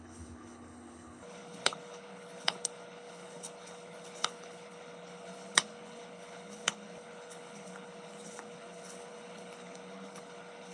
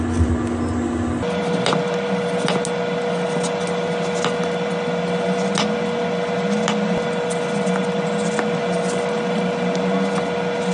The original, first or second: second